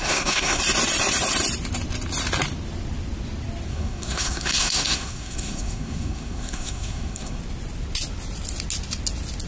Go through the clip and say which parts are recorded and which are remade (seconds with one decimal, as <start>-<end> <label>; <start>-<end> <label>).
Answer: 0.0-0.6 remade; 0.6-3.7 recorded; 3.7-7.4 remade; 7.4-9.5 recorded